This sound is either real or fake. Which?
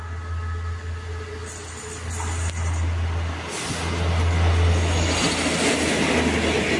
real